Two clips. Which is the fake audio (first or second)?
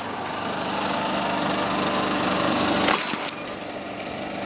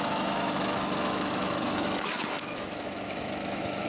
second